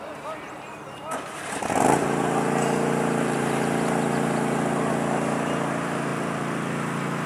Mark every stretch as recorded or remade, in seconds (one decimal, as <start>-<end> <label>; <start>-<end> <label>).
0.0-6.1 remade; 6.1-7.3 recorded